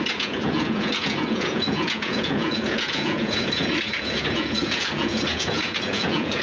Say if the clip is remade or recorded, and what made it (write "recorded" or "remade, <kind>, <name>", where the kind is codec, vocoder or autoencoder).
remade, vocoder, Vocos